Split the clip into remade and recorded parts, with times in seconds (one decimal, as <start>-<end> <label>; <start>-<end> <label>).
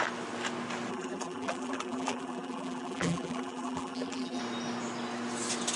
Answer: 0.0-0.9 recorded; 0.9-4.4 remade; 4.4-5.8 recorded